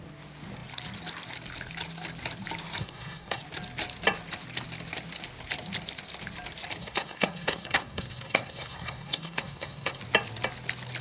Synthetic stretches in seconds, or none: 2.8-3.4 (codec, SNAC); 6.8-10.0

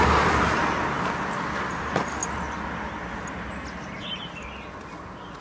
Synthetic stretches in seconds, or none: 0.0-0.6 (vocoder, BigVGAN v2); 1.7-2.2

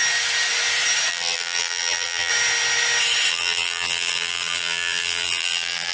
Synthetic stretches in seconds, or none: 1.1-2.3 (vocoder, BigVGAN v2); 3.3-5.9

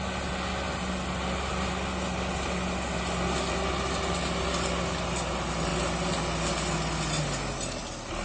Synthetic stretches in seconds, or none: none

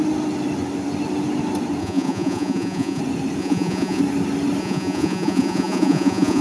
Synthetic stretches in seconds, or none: 1.8-3.0 (vocoder, Vocos); 3.4-4.0; 4.6-6.4

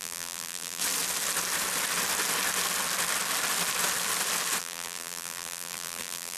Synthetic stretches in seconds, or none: 0.0-0.8 (vocoder, BigVGAN v2); 4.6-6.4

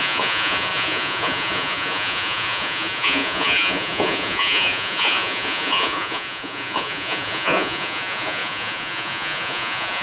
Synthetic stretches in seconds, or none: 0.0-10.0 (vocoder, Vocos)

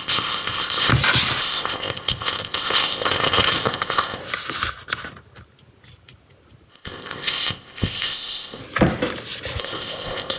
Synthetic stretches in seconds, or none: 0.0-0.9 (codec, ZipCodec); 1.4-4.2; 6.7-8.6; 9.6-10.4